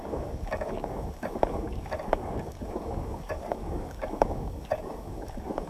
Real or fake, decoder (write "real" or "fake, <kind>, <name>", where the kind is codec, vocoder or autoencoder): fake, codec, DAC